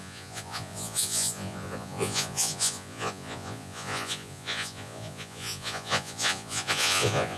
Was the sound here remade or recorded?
remade